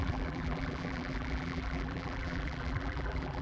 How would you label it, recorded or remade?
remade